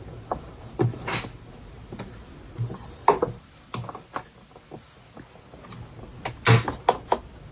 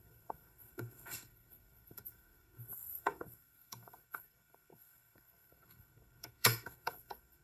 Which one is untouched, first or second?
first